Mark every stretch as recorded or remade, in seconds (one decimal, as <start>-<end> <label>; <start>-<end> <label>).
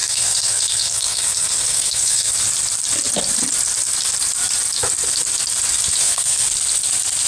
0.0-2.3 remade; 2.3-6.0 recorded; 6.0-6.5 remade; 6.5-7.3 recorded